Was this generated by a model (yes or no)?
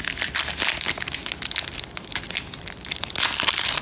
no